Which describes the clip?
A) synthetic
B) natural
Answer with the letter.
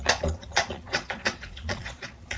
A